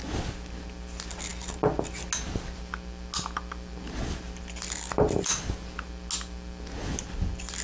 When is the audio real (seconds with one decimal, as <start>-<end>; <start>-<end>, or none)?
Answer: 0.0-7.6